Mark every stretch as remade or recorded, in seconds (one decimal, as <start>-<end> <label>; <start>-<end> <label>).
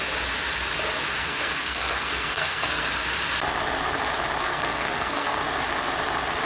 0.0-1.2 recorded; 1.2-2.9 remade; 2.9-4.4 recorded; 4.4-5.4 remade; 5.4-6.5 recorded